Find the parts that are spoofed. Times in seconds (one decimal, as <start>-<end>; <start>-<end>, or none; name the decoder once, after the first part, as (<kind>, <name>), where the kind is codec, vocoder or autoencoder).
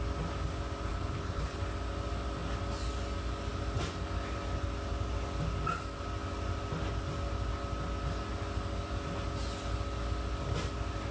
0.9-1.6 (codec, HILCodec)